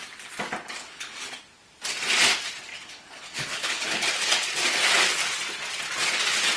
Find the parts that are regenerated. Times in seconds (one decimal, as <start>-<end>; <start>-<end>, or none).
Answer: 0.8-1.4; 2.7-4.1